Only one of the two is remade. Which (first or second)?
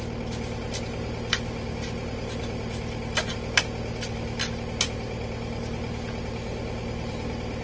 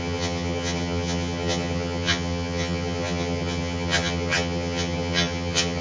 second